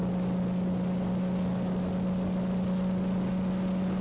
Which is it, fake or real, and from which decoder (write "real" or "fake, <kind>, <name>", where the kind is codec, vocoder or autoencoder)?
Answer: real